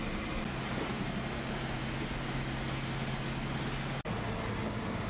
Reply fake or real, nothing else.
real